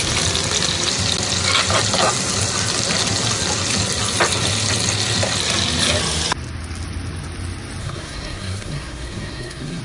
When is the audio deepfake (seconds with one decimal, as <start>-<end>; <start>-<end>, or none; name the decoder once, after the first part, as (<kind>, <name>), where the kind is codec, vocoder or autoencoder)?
7.8-9.8 (codec, SNAC)